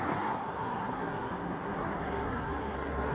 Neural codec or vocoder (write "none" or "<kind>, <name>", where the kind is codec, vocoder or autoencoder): codec, SNAC